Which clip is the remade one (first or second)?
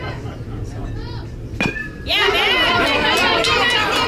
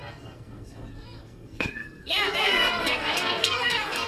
second